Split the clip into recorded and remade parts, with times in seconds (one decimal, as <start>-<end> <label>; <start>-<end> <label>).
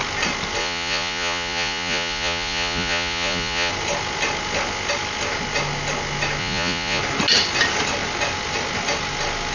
0.0-0.6 recorded; 0.6-3.7 remade; 3.7-6.4 recorded; 6.4-7.0 remade; 7.0-9.5 recorded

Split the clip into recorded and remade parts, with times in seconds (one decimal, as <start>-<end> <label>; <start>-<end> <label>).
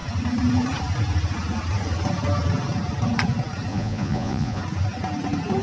0.0-3.7 recorded; 3.7-4.6 remade; 4.6-5.6 recorded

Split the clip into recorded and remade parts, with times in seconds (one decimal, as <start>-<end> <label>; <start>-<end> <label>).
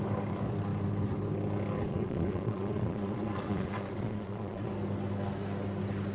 0.0-1.9 recorded; 1.9-4.7 remade; 4.7-6.1 recorded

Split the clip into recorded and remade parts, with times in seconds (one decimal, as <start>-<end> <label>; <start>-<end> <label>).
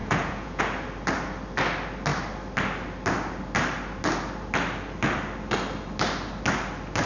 0.0-0.6 remade; 0.6-7.1 recorded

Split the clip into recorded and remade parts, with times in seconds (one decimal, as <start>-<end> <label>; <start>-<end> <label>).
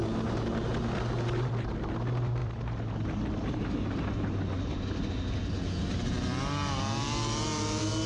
0.0-8.1 recorded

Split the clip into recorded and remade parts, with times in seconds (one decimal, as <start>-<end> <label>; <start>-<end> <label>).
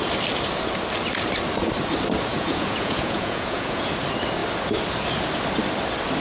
0.0-2.3 recorded; 2.3-3.9 remade; 3.9-6.2 recorded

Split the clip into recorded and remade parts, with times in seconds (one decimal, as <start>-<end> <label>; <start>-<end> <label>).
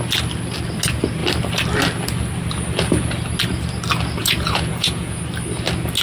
0.0-4.2 recorded; 4.2-5.2 remade; 5.2-6.0 recorded